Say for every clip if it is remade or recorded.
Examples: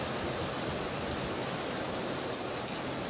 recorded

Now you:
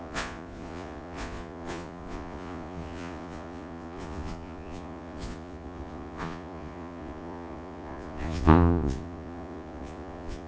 remade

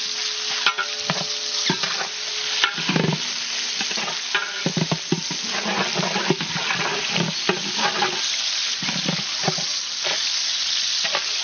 recorded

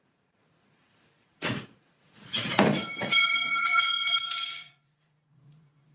remade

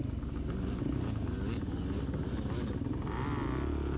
recorded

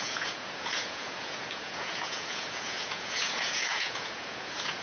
remade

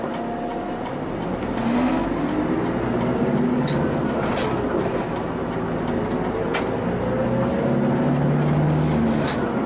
recorded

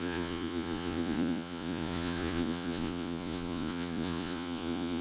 remade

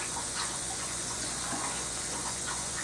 remade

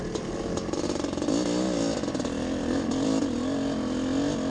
recorded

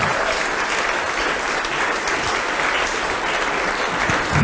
recorded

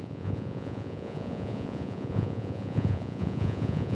remade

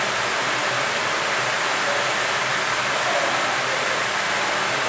recorded